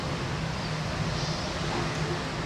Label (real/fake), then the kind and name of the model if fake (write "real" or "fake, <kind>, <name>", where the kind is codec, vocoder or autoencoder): real